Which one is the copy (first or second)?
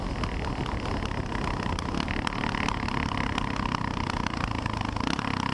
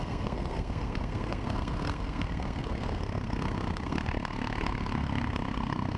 second